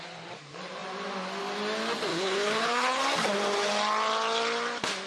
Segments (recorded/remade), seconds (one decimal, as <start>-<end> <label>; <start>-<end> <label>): 0.0-2.1 recorded; 2.1-3.0 remade; 3.0-5.1 recorded

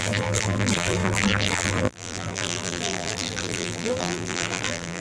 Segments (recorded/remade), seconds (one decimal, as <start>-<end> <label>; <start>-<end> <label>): 0.0-5.0 remade

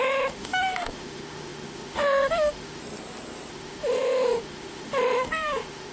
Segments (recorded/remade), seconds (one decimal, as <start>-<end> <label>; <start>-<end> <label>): 0.0-2.8 remade; 2.8-3.5 recorded; 3.5-5.9 remade

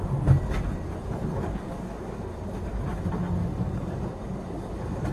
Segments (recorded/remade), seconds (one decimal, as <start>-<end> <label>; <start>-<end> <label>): 0.0-1.2 recorded; 1.2-2.2 remade; 2.2-3.4 recorded; 3.4-5.1 remade

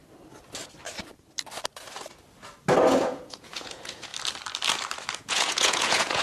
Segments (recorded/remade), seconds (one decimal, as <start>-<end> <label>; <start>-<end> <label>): 0.0-2.9 recorded; 2.9-4.1 remade; 4.1-5.2 recorded; 5.2-6.2 remade

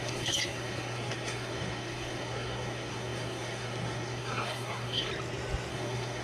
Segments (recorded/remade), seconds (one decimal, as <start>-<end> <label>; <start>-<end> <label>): 0.0-5.1 remade; 5.1-5.7 recorded; 5.7-6.2 remade

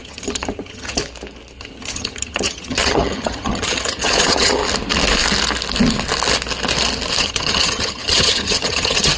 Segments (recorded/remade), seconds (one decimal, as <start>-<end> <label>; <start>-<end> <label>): 0.0-1.0 remade; 1.0-1.6 recorded; 1.6-4.6 remade; 4.6-7.2 recorded; 7.2-9.2 remade

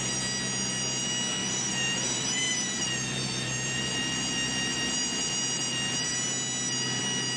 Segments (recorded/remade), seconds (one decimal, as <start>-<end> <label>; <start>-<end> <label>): 0.0-1.4 recorded; 1.4-3.9 remade; 3.9-7.4 recorded